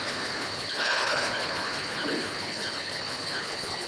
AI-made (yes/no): yes